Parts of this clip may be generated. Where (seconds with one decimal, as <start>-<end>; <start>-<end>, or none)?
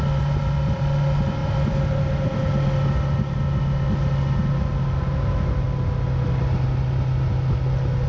none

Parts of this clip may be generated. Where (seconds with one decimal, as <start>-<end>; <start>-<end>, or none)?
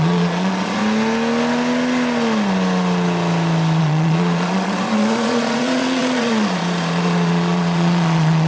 0.0-0.8; 3.8-8.5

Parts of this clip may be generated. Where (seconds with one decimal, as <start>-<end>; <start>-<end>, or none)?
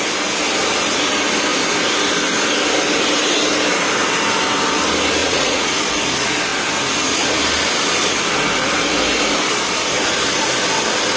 5.2-5.8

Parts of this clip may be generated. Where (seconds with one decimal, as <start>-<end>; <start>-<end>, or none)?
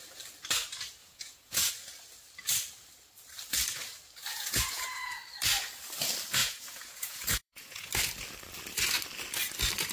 1.0-1.7; 4.3-5.2; 6.4-7.9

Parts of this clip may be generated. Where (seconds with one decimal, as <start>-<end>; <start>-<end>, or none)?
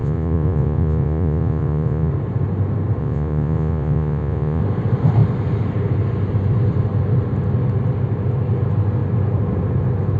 0.0-2.1; 3.0-4.6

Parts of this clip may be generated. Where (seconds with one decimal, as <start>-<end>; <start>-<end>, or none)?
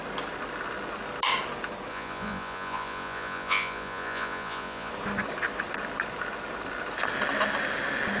1.9-4.9